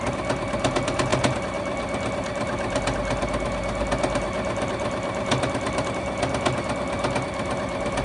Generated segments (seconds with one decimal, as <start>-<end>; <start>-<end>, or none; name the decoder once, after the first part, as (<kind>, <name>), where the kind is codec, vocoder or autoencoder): none